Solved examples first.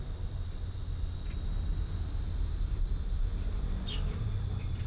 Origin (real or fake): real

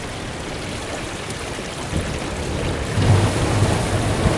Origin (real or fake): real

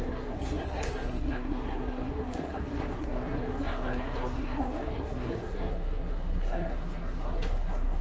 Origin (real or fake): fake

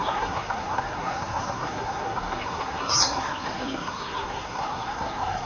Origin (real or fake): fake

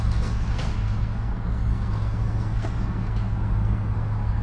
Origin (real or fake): fake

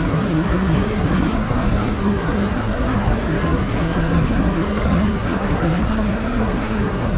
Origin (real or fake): fake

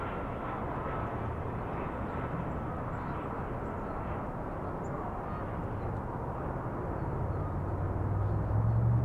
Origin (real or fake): real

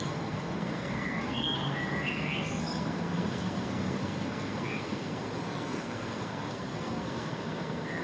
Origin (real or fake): fake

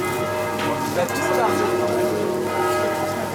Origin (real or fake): real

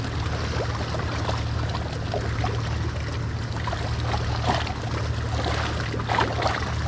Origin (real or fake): real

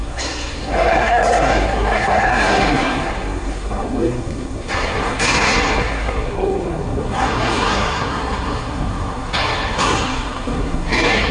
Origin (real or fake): fake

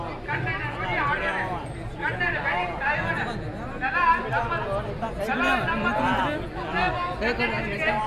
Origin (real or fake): real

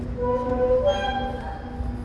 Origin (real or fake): real